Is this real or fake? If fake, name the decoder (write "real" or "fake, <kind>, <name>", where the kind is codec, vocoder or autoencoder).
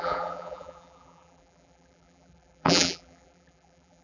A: fake, vocoder, BigVGAN v2